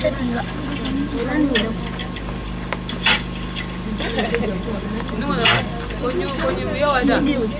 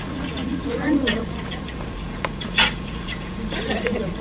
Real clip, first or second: first